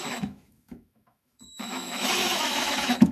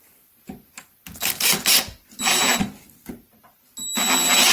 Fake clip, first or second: first